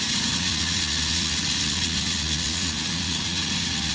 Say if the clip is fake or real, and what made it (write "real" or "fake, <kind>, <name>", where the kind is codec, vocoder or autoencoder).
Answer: fake, vocoder, Vocos